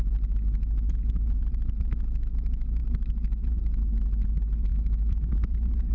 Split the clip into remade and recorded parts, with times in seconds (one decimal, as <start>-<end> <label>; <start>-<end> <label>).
0.0-4.7 recorded; 4.7-5.3 remade; 5.3-5.9 recorded